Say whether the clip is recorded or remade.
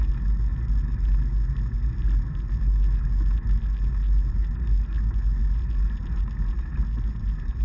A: recorded